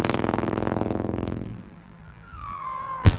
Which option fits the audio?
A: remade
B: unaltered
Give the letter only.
A